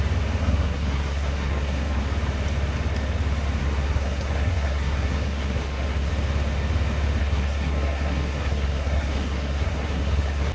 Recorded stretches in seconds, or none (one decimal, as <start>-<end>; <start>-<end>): 0.0-0.4; 2.0-3.6; 6.1-7.2